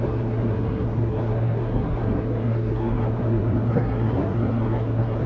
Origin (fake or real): fake